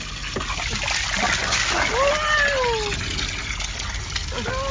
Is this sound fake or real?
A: real